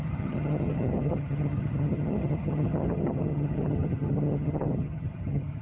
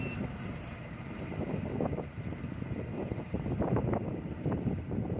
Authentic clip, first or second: second